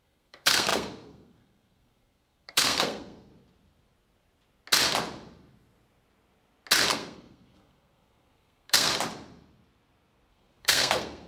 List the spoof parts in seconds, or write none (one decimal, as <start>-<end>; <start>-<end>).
0.0-3.3; 6.9-8.9; 10.3-11.3